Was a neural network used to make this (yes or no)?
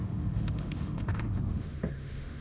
yes